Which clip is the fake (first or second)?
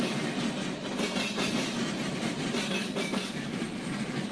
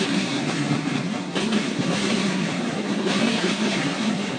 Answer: second